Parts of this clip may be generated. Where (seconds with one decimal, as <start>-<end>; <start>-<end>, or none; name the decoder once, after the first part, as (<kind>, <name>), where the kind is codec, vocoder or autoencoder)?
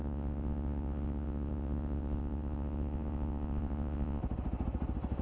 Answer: 0.0-4.2 (vocoder, WaveNeXt)